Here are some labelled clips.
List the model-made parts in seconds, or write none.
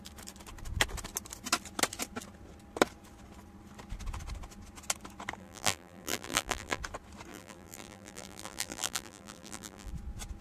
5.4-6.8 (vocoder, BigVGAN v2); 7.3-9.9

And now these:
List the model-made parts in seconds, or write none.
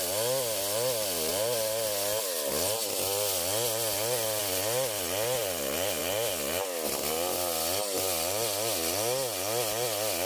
none